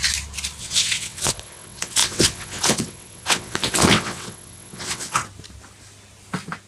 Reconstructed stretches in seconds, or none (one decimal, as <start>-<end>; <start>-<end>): 0.6-5.2